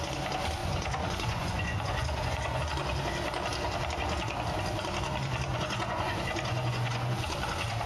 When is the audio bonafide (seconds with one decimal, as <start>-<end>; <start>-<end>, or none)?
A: 0.0-0.6; 2.6-5.5; 7.2-7.9